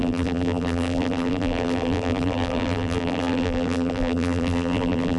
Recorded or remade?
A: remade